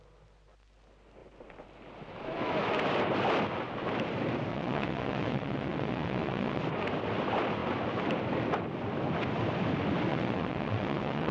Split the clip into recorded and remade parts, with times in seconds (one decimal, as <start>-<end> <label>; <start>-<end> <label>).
0.0-4.5 recorded; 4.5-6.6 remade; 6.6-10.1 recorded; 10.1-11.3 remade